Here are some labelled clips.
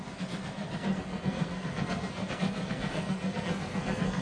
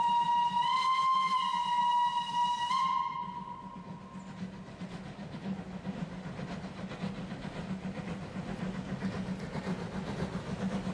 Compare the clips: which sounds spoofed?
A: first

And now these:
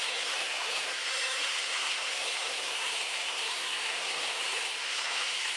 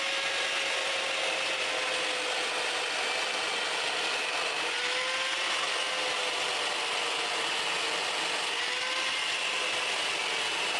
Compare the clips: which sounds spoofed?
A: first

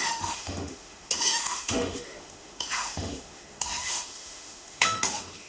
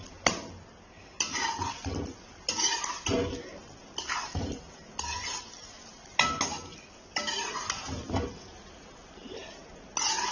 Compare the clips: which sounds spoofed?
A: first